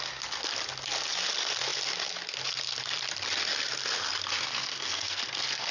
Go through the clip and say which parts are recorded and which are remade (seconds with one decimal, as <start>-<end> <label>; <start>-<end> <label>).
0.0-4.5 recorded; 4.5-5.7 remade